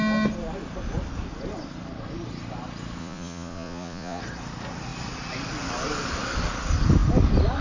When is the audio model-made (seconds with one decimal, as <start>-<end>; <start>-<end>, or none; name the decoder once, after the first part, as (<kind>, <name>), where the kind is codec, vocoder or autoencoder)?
3.0-4.2 (vocoder, Vocos)